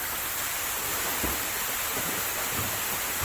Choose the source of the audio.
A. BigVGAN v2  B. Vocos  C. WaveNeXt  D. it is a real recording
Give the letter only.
D